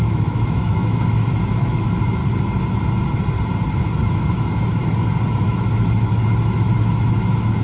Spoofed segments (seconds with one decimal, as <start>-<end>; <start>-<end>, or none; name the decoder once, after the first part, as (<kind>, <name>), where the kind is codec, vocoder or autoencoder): 0.0-2.2 (autoencoder, DAC-VAE); 3.7-4.8; 5.4-7.6